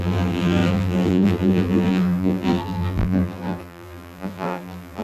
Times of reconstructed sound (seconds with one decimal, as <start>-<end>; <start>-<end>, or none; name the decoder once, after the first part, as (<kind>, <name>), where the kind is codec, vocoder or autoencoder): 0.0-5.0 (vocoder, BigVGAN v2)